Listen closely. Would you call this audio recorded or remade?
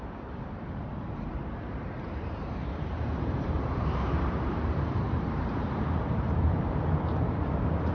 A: remade